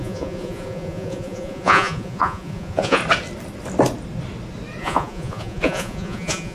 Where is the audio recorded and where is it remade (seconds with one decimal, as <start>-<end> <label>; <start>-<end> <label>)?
0.0-3.0 remade; 3.0-4.8 recorded; 4.8-6.5 remade